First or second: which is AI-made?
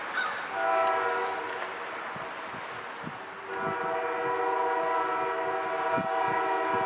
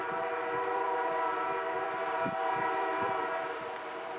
second